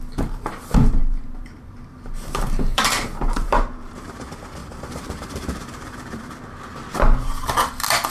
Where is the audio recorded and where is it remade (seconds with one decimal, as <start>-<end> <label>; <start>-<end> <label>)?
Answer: 0.0-1.0 recorded; 1.0-3.9 remade; 3.9-4.6 recorded; 4.6-6.3 remade; 6.3-8.1 recorded